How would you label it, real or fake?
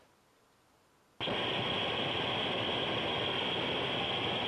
real